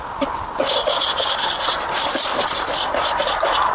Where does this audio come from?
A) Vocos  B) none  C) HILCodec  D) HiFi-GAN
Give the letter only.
B